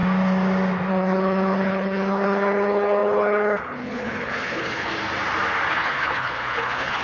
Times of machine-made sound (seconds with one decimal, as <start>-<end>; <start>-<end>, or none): 0.9-4.9; 5.7-7.0